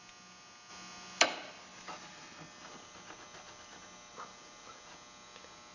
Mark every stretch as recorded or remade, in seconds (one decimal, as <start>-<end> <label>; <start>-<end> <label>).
0.0-5.7 recorded